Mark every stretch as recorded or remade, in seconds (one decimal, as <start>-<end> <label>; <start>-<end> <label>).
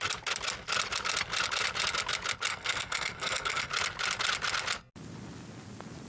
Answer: 0.0-2.5 recorded; 2.5-3.7 remade; 3.7-6.1 recorded